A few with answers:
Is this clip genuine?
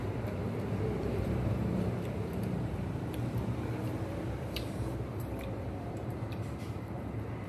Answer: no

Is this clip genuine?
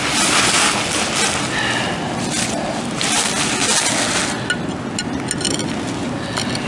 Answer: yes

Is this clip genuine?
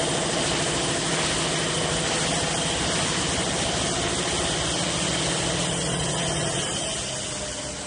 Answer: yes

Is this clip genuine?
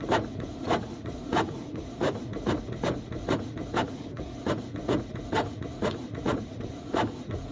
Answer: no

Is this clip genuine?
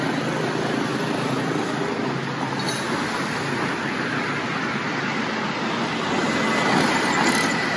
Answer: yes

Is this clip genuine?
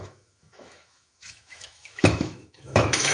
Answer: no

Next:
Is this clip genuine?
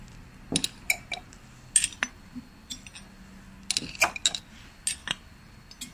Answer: yes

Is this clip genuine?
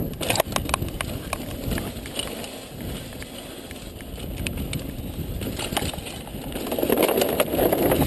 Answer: yes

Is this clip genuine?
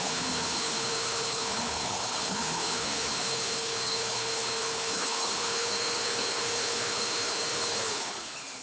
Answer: no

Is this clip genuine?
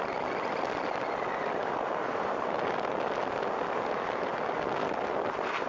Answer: yes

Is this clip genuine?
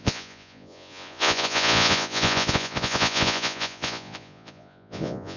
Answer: no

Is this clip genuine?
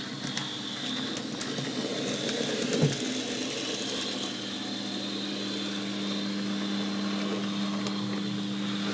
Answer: yes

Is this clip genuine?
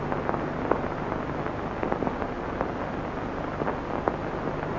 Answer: yes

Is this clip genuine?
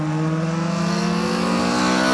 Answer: yes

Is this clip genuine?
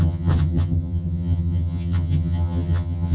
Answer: no